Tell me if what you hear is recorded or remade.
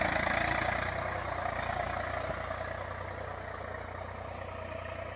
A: recorded